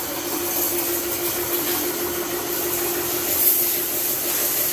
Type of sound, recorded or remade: recorded